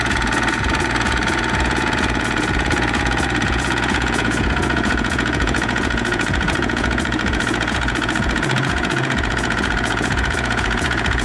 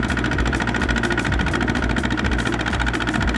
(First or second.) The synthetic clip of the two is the first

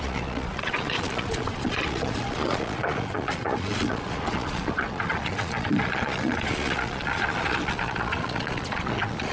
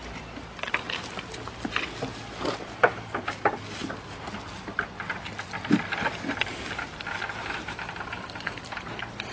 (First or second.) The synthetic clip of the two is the first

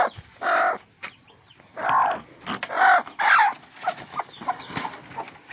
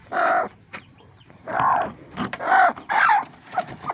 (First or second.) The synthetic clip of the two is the second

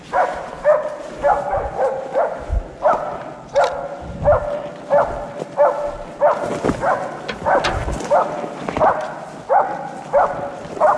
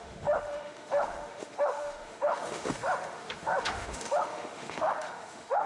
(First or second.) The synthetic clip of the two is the second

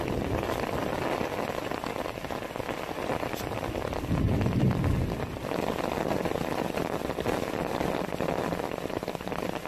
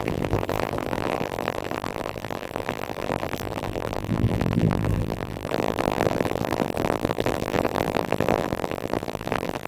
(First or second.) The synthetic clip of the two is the second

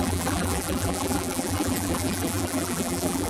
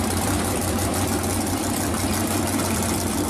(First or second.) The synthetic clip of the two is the first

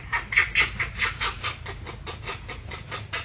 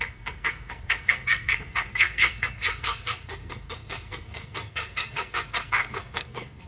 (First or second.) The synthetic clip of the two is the second